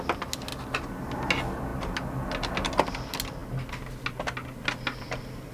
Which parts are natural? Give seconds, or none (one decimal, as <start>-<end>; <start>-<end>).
0.0-5.5